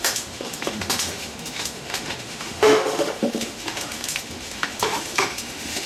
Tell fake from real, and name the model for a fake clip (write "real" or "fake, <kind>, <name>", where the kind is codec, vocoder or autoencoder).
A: fake, autoencoder, DAC-VAE